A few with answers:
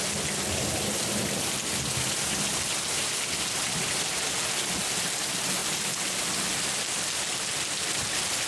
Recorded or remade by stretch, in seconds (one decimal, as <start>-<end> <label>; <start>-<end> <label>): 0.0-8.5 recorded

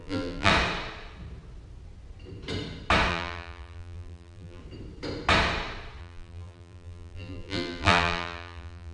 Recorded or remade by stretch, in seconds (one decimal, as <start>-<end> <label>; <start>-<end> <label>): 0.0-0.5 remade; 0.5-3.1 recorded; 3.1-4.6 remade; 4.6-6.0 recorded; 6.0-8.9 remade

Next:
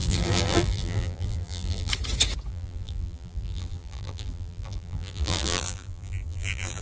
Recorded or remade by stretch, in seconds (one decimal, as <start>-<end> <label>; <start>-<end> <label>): 0.0-1.9 remade; 1.9-2.5 recorded; 2.5-6.8 remade